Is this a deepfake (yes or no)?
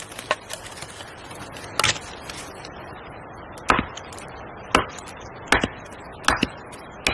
no